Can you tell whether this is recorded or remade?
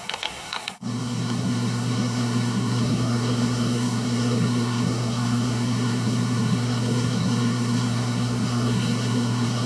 remade